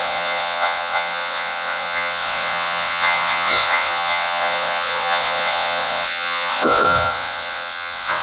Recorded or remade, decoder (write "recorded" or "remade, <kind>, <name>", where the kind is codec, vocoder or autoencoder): remade, vocoder, WaveNeXt